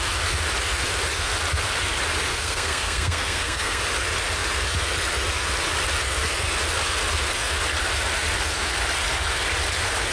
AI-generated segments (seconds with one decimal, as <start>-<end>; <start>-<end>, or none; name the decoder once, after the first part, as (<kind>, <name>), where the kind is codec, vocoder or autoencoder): 2.3-3.8 (codec, SNAC)